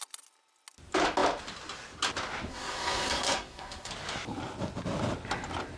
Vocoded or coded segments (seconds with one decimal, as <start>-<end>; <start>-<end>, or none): 2.5-3.9